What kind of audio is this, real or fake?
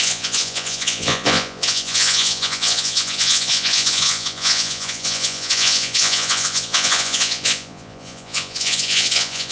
fake